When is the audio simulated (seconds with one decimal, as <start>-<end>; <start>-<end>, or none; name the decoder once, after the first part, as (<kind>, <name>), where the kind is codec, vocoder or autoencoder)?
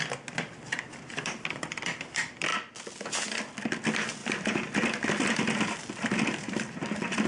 0.0-2.5 (vocoder, BigVGAN v2); 3.1-7.3